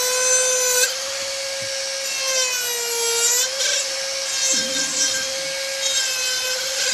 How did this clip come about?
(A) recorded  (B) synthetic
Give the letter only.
A